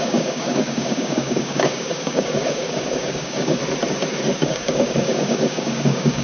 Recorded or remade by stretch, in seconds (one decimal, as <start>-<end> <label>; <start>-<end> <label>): 0.0-3.6 remade; 3.6-4.4 recorded; 4.4-6.2 remade